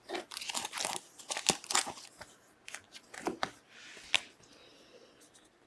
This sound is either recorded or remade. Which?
recorded